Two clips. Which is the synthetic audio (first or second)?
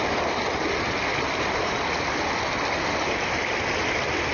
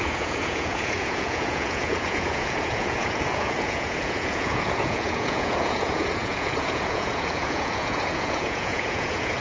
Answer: second